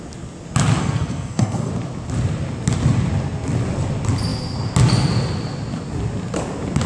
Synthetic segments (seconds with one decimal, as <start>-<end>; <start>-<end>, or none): 0.8-1.7